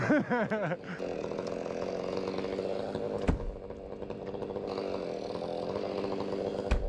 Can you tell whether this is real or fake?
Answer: real